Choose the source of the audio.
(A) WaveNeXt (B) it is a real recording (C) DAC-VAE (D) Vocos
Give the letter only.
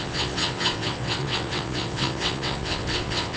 A